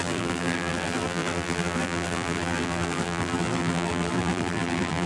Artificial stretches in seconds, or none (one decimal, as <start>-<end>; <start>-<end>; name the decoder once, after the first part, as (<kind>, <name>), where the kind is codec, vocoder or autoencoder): 0.0-5.1 (vocoder, BigVGAN v2)